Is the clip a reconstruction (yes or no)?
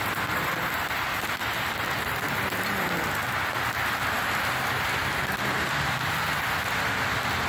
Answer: no